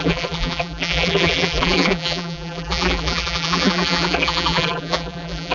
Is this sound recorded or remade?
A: remade